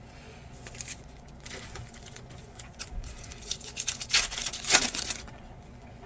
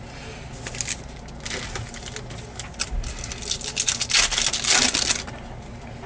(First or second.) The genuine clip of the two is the second